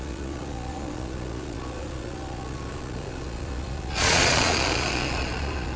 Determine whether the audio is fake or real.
fake